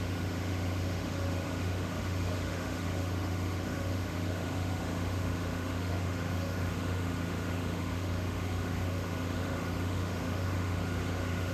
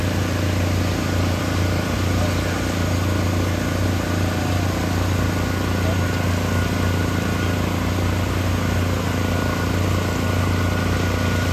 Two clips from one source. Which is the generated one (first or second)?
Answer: first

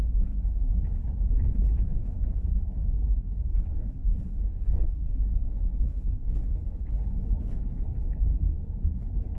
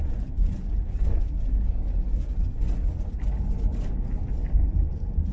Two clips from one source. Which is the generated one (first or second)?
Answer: first